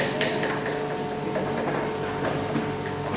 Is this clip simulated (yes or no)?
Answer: no